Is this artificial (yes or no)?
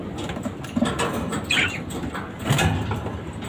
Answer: no